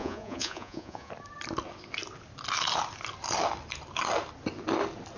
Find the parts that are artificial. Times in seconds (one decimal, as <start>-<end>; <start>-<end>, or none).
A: 0.0-1.1